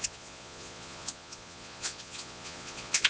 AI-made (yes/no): yes